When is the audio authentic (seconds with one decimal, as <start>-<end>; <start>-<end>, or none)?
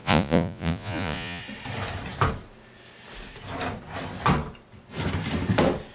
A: 1.4-5.9